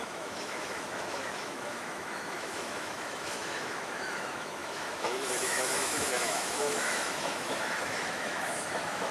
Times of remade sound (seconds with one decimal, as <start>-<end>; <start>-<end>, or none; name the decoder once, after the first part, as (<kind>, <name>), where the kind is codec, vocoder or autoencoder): 0.0-9.1 (autoencoder, DAC-VAE)